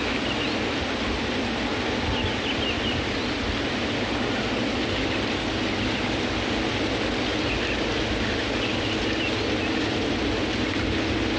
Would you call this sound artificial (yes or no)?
no